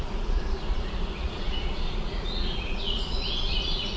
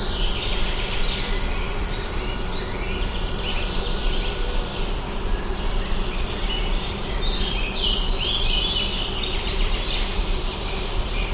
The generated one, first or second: first